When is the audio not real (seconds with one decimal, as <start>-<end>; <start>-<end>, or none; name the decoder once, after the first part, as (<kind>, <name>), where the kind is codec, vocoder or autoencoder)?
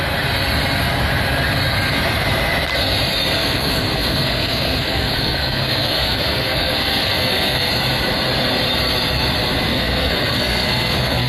3.4-7.7 (codec, SNAC); 9.7-11.3